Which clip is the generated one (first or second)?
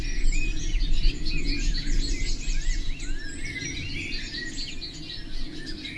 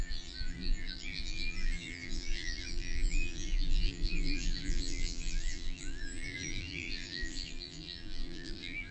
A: second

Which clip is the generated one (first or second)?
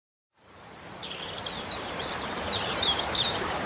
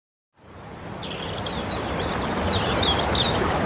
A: first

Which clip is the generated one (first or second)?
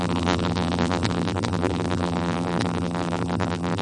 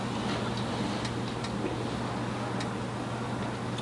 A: first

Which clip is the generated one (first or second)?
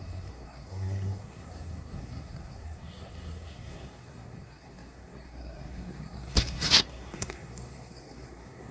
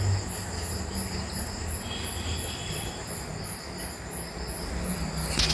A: first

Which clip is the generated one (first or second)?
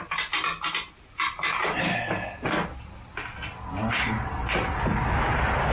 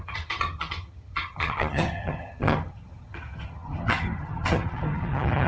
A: second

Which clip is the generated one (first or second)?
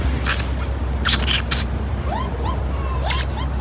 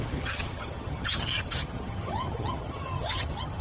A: second